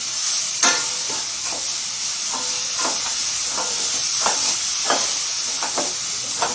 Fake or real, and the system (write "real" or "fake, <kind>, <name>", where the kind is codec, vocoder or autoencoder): real